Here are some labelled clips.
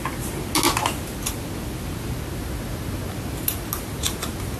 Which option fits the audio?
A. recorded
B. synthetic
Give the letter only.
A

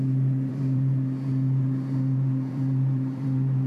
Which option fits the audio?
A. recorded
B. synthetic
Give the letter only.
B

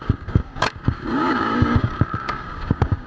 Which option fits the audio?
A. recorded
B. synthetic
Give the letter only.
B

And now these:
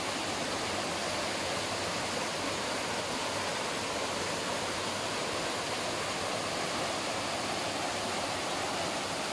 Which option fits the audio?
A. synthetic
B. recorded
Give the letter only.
B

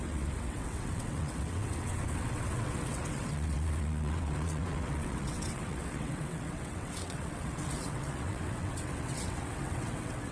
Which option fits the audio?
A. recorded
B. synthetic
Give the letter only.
B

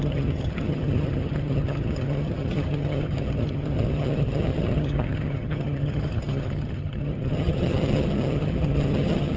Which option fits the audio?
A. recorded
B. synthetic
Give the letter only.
B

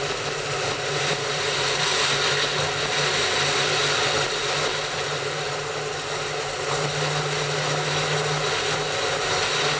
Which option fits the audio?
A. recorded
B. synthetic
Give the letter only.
A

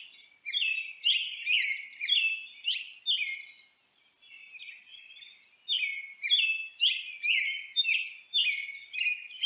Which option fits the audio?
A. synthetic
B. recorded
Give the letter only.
B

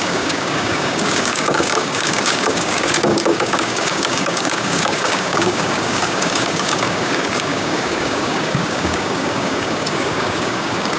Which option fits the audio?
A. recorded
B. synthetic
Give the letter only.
B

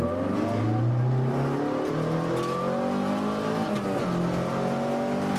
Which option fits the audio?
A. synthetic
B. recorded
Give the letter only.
B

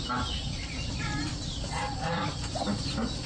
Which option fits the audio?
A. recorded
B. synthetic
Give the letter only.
B